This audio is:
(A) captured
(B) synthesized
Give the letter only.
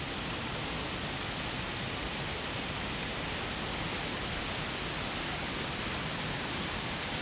A